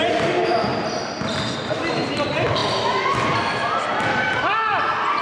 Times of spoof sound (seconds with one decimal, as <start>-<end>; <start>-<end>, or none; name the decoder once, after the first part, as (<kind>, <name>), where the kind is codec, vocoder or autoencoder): 0.0-0.7 (vocoder, BigVGAN v2); 1.9-5.2